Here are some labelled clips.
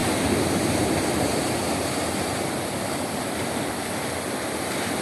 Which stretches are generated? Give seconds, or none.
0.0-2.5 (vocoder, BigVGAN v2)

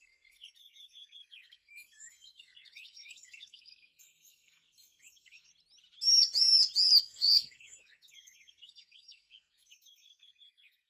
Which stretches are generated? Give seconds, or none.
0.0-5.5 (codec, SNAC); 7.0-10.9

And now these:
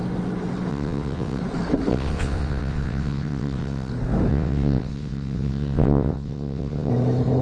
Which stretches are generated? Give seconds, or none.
0.7-1.4 (vocoder, WaveNeXt); 1.9-3.9; 4.3-6.9

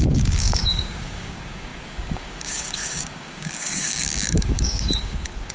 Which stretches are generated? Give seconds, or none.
0.0-5.5 (codec, DAC)

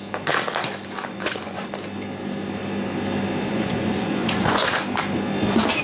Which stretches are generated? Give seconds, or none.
1.1-1.7 (vocoder, Vocos); 3.5-4.8

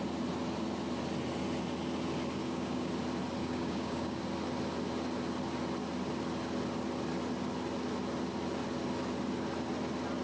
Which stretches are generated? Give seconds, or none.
2.4-2.9 (codec, DAC); 3.4-4.2

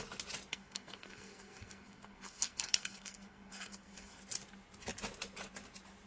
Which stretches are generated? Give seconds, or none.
0.5-4.2 (codec, SNAC)

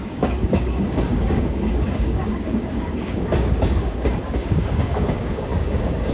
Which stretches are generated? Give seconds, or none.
0.0-6.1 (codec, DAC)